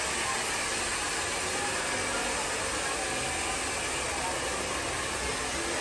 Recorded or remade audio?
recorded